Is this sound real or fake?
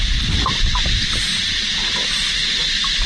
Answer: real